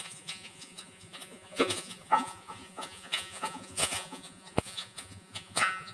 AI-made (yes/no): yes